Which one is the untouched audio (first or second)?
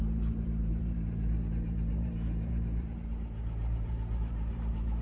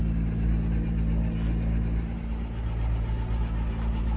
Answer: second